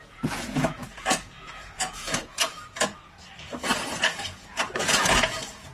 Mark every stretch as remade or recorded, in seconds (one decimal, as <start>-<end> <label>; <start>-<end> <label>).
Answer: 0.0-3.0 remade; 3.0-4.0 recorded; 4.0-5.7 remade